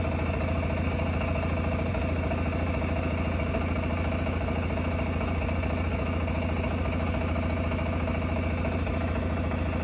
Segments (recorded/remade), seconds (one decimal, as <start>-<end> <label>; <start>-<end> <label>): 0.0-9.8 recorded